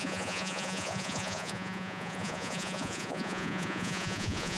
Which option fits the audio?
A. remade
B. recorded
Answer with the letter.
A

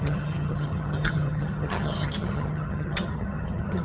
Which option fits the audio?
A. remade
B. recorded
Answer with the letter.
A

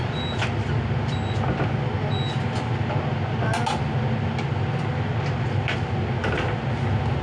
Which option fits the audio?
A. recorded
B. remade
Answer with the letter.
A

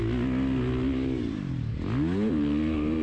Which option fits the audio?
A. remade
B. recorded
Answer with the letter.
B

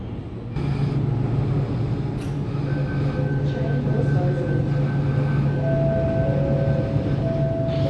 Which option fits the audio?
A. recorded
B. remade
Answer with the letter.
A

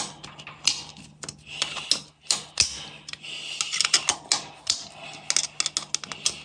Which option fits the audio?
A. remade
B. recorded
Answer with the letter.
B